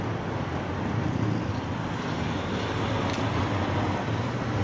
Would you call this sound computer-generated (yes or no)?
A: no